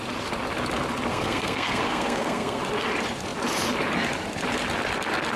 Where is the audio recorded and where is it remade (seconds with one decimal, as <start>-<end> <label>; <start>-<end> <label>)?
0.0-1.1 recorded; 1.1-2.6 remade; 2.6-5.4 recorded